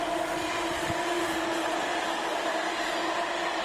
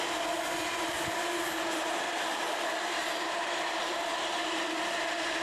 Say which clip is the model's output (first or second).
second